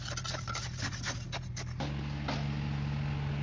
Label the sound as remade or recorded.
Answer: recorded